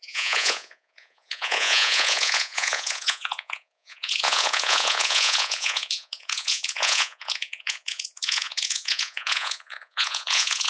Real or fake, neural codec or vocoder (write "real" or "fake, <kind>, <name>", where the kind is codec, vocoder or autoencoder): fake, vocoder, Vocos